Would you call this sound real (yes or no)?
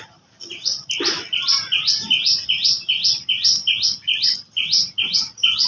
no